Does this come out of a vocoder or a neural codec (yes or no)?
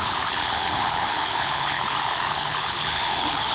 yes